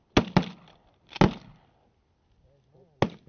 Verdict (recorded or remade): recorded